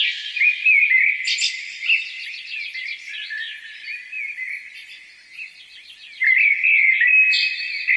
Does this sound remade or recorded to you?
recorded